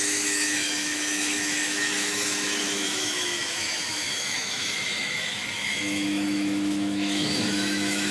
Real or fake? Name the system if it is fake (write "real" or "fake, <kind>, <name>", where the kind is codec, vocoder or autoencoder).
fake, autoencoder, DAC-VAE